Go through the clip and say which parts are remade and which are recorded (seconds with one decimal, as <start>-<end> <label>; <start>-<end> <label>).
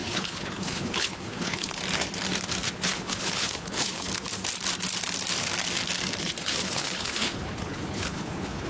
0.0-1.8 remade; 1.8-2.7 recorded; 2.7-4.1 remade; 4.1-6.2 recorded; 6.2-8.7 remade